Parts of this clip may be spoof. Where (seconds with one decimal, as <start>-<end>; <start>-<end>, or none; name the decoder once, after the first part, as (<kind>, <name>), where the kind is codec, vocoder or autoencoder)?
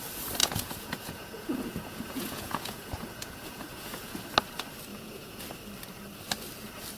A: 0.4-4.2 (vocoder, Vocos); 4.9-5.4